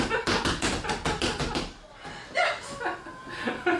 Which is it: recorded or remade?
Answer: recorded